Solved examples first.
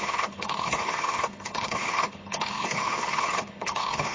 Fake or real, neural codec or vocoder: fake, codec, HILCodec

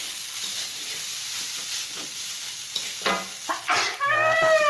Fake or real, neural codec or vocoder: real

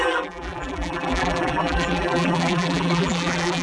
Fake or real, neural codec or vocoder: fake, vocoder, BigVGAN v2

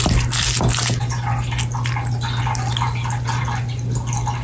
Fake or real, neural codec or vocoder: real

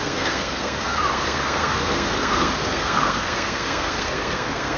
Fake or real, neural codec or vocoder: fake, codec, SNAC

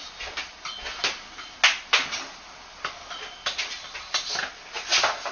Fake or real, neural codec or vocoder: real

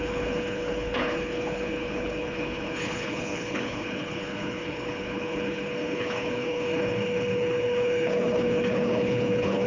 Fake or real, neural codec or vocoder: fake, codec, HILCodec